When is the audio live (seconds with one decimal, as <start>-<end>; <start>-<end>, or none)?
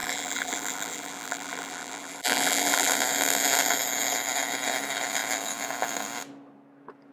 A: 2.9-7.1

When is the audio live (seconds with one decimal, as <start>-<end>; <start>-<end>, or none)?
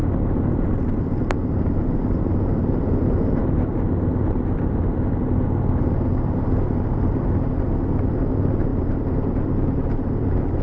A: 0.0-1.0; 3.4-5.8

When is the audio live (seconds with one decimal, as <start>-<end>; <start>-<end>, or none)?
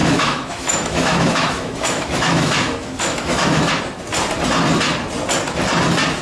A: 3.7-6.2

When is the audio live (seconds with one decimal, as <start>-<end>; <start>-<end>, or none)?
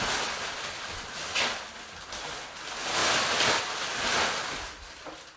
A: 0.0-5.4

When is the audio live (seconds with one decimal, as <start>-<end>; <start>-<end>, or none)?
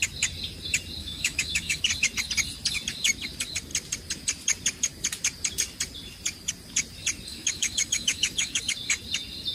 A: 0.0-1.0; 1.8-7.3; 8.6-9.5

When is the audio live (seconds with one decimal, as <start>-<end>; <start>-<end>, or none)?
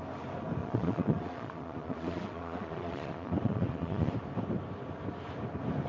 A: 0.0-0.6; 4.1-5.9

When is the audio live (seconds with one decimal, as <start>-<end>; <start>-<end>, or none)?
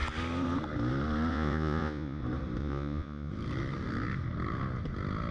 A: 0.0-1.3; 2.2-2.6; 3.3-5.3